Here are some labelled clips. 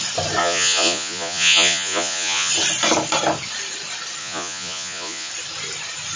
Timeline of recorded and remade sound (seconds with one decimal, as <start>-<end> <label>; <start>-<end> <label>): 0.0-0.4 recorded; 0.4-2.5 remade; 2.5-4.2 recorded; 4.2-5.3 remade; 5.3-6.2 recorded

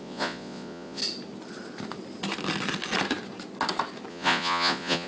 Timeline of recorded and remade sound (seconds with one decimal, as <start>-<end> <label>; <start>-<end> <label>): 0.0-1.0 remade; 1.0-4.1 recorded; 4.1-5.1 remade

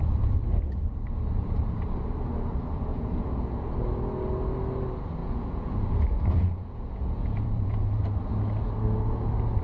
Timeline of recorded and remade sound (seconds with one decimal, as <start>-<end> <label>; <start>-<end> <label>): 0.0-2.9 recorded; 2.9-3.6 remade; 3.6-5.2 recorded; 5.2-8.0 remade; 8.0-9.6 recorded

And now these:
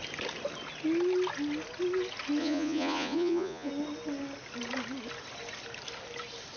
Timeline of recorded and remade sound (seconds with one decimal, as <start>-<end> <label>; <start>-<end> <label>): 0.0-2.4 recorded; 2.4-3.7 remade; 3.7-6.6 recorded